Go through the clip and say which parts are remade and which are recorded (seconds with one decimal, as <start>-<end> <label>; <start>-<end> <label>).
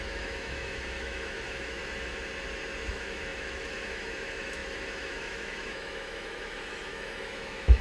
0.0-1.8 remade; 1.8-2.9 recorded; 2.9-7.8 remade